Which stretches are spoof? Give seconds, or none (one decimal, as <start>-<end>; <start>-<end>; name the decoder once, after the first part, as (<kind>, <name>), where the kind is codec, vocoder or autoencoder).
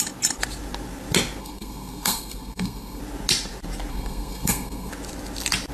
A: 1.4-3.0 (codec, SNAC); 3.9-4.9